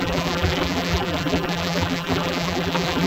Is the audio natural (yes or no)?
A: no